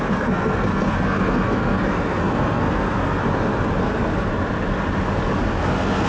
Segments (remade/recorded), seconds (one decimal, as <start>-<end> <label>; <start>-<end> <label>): 0.0-3.2 remade; 3.2-3.8 recorded; 3.8-4.3 remade; 4.3-5.6 recorded; 5.6-6.1 remade